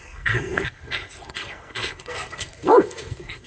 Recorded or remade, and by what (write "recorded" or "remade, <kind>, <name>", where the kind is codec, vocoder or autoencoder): remade, codec, SNAC